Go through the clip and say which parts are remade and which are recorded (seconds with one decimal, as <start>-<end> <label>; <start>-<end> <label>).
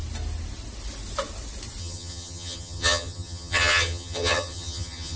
0.0-1.8 recorded; 1.8-5.2 remade